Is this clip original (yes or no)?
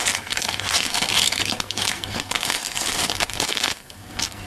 no